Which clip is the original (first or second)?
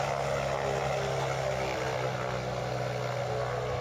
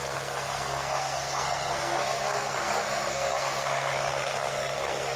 first